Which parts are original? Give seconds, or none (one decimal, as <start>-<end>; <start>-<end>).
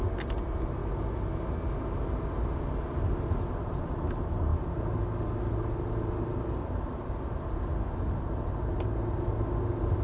0.0-10.0